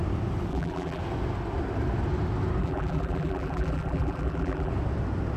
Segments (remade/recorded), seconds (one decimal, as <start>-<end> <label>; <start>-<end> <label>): 0.0-0.5 recorded; 0.5-1.0 remade; 1.0-2.6 recorded; 2.6-4.7 remade; 4.7-5.4 recorded

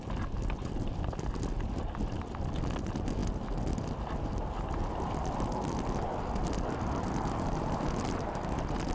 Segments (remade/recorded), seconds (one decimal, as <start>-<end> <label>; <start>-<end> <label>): 0.0-8.9 recorded

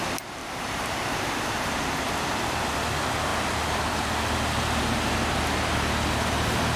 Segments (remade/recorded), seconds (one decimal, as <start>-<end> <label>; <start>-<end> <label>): 0.0-0.4 recorded; 0.4-1.7 remade; 1.7-6.8 recorded